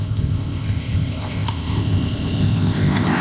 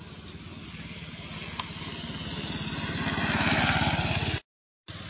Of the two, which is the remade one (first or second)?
first